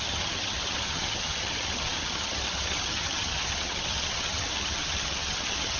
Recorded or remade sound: remade